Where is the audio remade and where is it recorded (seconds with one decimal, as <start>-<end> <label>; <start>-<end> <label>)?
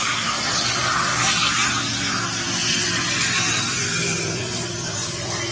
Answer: 0.0-5.5 recorded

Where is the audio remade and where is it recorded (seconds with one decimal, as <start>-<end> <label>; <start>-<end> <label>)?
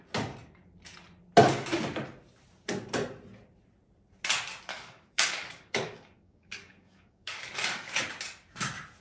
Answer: 0.0-4.7 recorded; 4.7-8.0 remade; 8.0-9.0 recorded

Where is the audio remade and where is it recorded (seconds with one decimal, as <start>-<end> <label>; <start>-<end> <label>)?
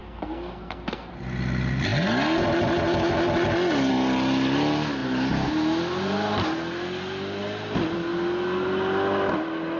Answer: 0.0-1.1 remade; 1.1-9.8 recorded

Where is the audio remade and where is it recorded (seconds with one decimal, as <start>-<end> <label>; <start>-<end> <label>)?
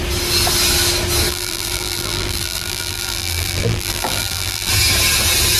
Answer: 0.0-1.3 recorded; 1.3-4.7 remade; 4.7-5.6 recorded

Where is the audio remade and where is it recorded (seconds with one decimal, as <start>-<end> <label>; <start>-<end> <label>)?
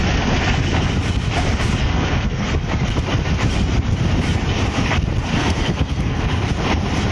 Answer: 0.0-1.8 recorded; 1.8-2.5 remade; 2.5-5.3 recorded; 5.3-6.2 remade; 6.2-7.1 recorded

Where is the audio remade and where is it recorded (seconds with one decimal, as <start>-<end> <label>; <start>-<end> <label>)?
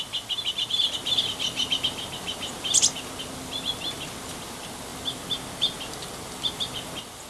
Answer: 0.0-7.3 recorded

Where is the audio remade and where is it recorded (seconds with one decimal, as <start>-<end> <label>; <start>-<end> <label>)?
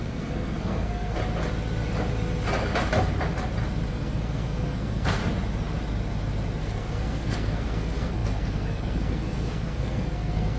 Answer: 0.0-1.2 remade; 1.2-3.9 recorded; 3.9-5.2 remade; 5.2-6.6 recorded; 6.6-10.6 remade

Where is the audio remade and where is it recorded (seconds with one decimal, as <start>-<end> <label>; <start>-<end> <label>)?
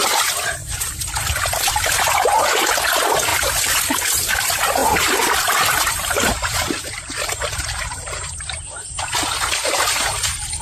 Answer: 0.0-0.6 recorded; 0.6-1.7 remade; 1.7-3.3 recorded; 3.3-4.3 remade; 4.3-4.8 recorded; 4.8-9.0 remade; 9.0-10.6 recorded